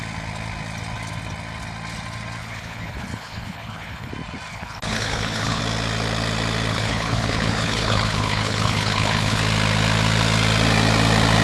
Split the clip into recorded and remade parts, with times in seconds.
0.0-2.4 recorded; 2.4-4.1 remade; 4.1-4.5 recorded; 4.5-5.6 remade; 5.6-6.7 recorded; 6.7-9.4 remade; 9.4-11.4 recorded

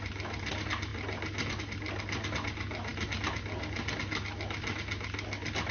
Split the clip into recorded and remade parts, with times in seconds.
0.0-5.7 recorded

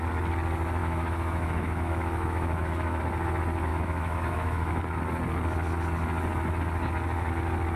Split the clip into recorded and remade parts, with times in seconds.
0.0-0.8 recorded; 0.8-3.0 remade; 3.0-3.7 recorded; 3.7-4.8 remade; 4.8-7.8 recorded

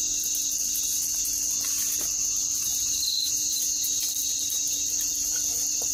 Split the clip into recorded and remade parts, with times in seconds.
0.0-2.7 recorded; 2.7-5.4 remade; 5.4-5.9 recorded

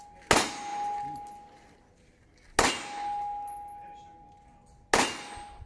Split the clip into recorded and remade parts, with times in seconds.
0.0-5.7 recorded